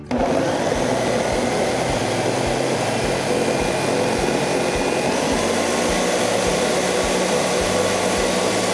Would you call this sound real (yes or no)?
yes